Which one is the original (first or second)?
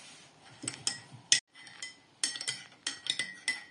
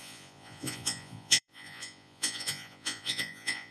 first